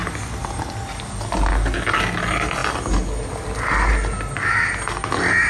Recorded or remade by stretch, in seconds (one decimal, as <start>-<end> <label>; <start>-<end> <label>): 0.0-5.5 recorded